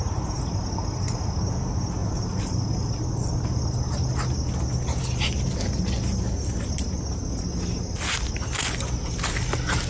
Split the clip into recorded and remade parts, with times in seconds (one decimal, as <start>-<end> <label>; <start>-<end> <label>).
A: 0.0-2.0 recorded; 2.0-2.9 remade; 2.9-9.9 recorded